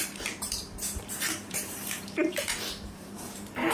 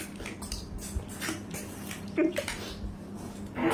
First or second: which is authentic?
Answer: second